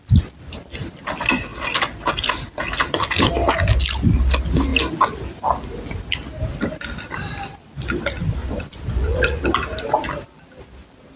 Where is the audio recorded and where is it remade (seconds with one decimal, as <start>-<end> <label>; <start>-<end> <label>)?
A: 0.0-8.4 recorded; 8.4-9.4 remade; 9.4-11.2 recorded